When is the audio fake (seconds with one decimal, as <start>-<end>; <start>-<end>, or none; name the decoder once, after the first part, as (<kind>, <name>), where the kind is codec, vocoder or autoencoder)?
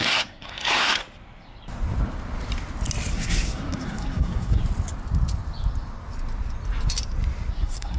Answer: 0.0-1.0 (codec, SNAC); 3.1-4.6; 7.5-8.0